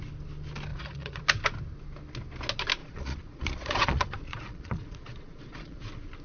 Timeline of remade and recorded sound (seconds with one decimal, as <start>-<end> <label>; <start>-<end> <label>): 0.0-0.7 recorded; 0.7-1.2 remade; 1.2-2.8 recorded; 2.8-5.8 remade; 5.8-6.2 recorded